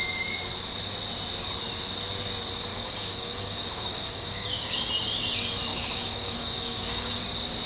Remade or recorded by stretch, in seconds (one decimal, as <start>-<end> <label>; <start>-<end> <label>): 0.0-2.7 recorded; 2.7-4.8 remade; 4.8-5.7 recorded; 5.7-7.2 remade; 7.2-7.7 recorded